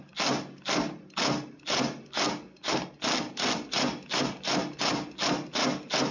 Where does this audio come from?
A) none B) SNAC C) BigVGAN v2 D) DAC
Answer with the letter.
A